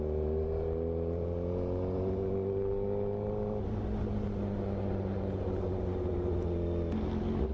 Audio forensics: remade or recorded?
recorded